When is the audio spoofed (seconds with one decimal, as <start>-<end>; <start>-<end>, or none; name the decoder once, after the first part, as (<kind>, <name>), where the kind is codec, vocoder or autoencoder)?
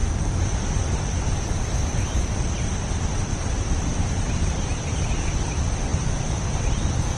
none